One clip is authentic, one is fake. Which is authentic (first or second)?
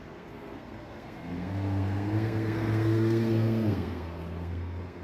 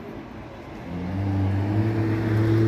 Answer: second